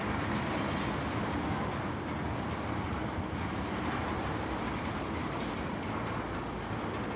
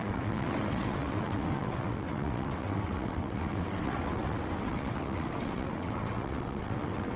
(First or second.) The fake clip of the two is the second